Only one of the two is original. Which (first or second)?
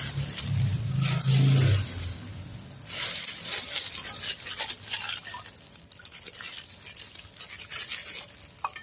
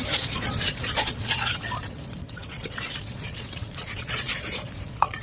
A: first